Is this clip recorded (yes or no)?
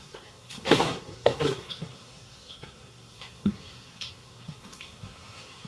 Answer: no